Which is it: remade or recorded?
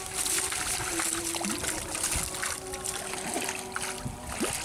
recorded